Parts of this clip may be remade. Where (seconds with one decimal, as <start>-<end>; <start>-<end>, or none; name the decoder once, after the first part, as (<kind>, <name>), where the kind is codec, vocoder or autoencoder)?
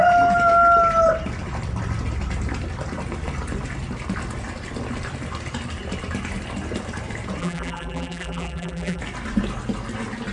7.4-9.0 (vocoder, BigVGAN v2)